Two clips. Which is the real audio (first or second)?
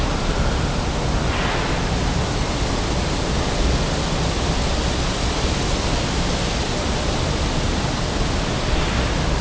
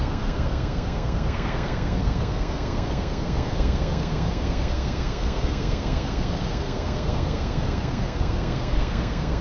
first